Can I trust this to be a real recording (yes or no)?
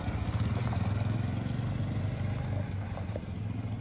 yes